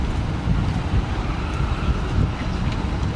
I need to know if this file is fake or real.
real